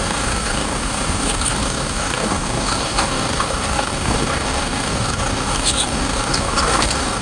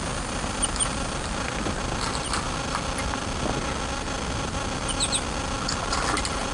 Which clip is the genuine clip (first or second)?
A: second